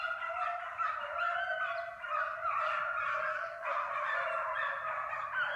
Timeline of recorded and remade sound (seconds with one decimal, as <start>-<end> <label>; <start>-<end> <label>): 0.0-3.3 recorded; 3.3-3.9 remade; 3.9-5.6 recorded